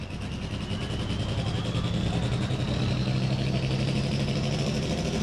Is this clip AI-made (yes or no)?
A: no